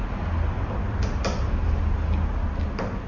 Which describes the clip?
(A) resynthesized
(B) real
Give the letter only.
B